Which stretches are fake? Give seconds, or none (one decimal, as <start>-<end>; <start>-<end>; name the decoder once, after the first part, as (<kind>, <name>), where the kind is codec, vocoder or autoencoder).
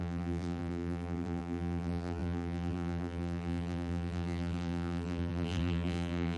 0.0-6.4 (vocoder, BigVGAN v2)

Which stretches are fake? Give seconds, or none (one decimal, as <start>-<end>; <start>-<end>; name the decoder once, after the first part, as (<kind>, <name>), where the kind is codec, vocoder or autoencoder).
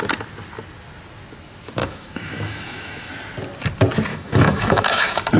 1.8-3.1 (autoencoder, DAC-VAE); 4.1-5.4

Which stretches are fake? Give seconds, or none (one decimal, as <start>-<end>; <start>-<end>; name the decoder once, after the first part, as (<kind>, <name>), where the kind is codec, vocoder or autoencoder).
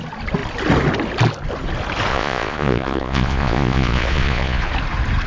2.1-4.7 (vocoder, Vocos)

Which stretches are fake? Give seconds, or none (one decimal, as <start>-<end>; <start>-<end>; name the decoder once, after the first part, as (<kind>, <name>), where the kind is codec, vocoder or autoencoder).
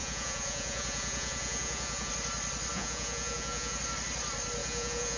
0.0-2.1 (vocoder, Vocos); 2.7-3.8; 4.6-5.2